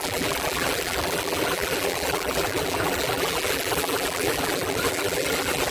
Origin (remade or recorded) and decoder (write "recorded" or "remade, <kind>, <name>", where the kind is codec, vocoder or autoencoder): remade, vocoder, BigVGAN v2